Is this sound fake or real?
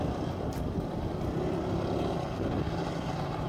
real